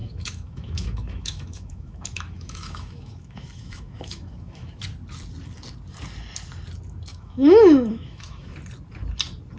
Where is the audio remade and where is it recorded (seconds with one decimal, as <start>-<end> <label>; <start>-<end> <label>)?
0.0-4.8 remade; 4.8-7.1 recorded; 7.1-8.5 remade; 8.5-9.6 recorded